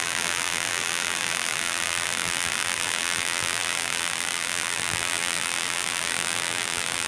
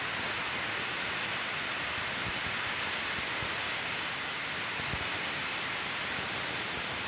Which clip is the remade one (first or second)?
first